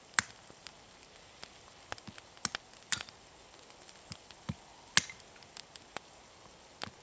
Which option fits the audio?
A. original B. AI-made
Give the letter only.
A